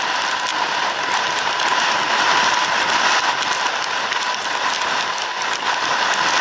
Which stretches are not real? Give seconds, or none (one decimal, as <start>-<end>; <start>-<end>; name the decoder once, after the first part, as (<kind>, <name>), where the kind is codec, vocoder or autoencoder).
none